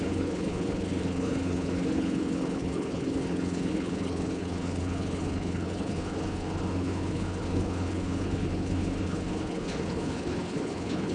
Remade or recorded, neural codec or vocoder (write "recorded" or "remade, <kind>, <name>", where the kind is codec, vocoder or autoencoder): remade, codec, HILCodec